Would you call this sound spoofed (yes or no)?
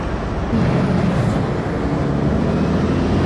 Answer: no